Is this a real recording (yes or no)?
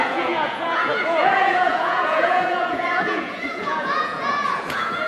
no